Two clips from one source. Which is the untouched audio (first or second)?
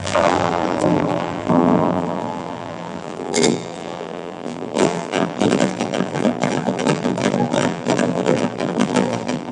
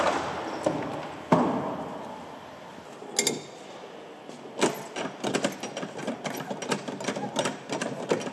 second